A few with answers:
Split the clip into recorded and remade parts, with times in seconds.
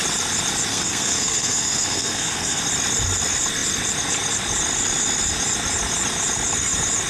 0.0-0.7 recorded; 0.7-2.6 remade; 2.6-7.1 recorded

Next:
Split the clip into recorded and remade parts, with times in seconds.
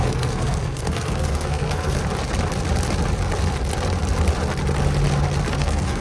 0.0-2.0 remade; 2.0-5.6 recorded; 5.6-6.0 remade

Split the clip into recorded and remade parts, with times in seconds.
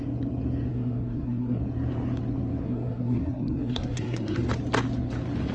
0.0-0.7 recorded; 0.7-1.6 remade; 1.6-2.6 recorded; 2.6-4.5 remade; 4.5-5.5 recorded